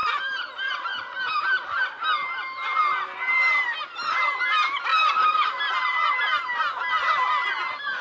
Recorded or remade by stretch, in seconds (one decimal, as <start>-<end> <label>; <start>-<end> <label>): 0.0-8.0 recorded